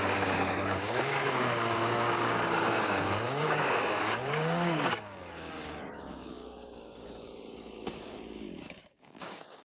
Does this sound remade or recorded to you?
remade